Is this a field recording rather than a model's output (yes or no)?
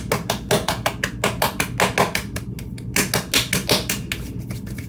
yes